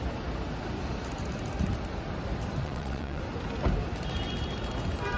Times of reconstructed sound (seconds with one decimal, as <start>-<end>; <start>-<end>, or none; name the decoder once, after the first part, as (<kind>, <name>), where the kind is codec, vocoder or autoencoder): 2.6-3.2 (vocoder, WaveNeXt)

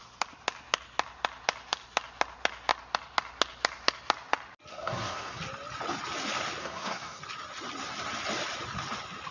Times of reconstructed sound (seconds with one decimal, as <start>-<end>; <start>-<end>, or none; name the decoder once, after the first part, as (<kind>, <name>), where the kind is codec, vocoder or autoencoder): 4.7-5.4 (codec, SNAC); 6.6-7.2

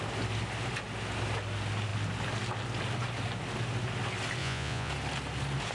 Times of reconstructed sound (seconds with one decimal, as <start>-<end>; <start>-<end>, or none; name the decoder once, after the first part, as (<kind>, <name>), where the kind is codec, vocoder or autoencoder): 4.4-4.9 (vocoder, Vocos)

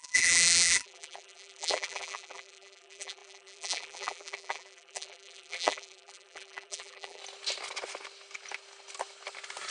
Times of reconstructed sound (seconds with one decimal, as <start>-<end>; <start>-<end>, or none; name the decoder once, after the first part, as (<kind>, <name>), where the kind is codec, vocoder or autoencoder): 0.0-7.2 (vocoder, BigVGAN v2)

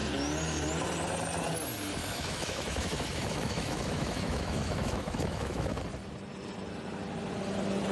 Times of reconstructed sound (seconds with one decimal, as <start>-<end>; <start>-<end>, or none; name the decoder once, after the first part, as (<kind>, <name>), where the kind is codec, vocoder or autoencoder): 2.0-5.8 (autoencoder, DAC-VAE)

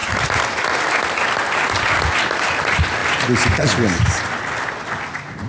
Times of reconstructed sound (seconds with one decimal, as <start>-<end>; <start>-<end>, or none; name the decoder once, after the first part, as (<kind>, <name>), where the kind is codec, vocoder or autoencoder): none